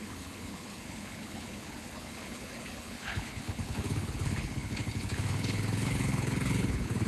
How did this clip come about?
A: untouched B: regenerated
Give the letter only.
B